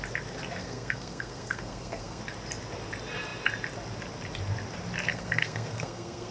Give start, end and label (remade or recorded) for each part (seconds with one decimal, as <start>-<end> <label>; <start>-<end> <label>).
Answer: 0.0-0.6 recorded; 0.6-2.2 remade; 2.2-5.1 recorded; 5.1-6.3 remade